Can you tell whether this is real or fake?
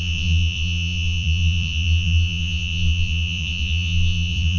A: fake